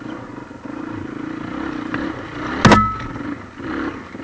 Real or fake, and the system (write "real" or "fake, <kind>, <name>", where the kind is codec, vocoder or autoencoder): real